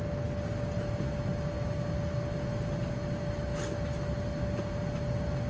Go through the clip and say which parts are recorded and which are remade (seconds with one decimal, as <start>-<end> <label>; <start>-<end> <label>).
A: 0.0-5.5 recorded